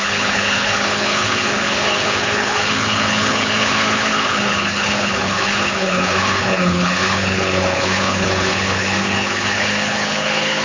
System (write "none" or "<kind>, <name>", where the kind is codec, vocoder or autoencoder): codec, HILCodec